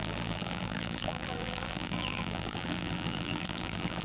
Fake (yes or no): yes